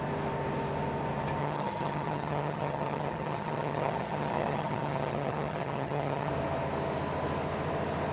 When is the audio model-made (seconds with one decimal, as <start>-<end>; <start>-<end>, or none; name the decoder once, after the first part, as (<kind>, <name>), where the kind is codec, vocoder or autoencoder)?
1.4-6.3 (vocoder, HiFi-GAN)